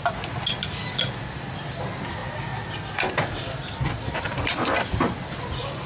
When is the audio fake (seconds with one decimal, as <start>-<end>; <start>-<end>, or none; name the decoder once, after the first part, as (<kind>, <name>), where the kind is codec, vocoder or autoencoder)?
none